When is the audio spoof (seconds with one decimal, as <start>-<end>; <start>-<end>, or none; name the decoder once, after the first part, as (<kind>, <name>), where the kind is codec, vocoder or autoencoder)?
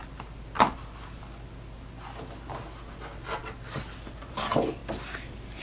none